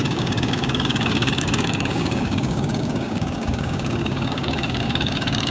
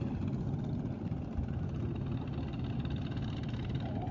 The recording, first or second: second